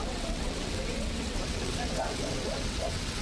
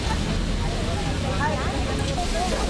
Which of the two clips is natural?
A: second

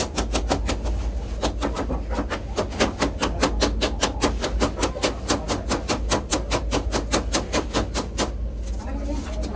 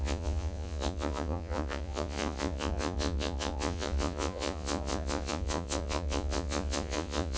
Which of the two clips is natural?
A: first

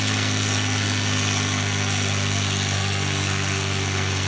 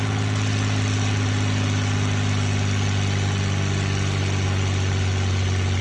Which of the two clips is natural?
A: second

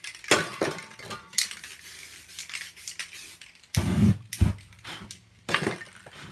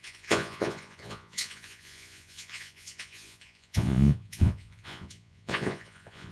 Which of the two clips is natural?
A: first